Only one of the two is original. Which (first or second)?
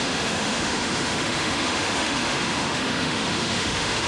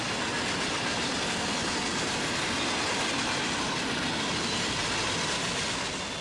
second